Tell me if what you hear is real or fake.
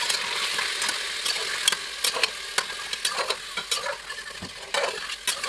real